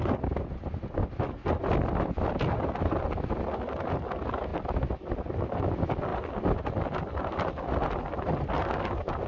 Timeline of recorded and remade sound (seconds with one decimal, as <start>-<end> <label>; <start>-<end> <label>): 0.0-4.5 recorded; 4.5-5.5 remade; 5.5-9.3 recorded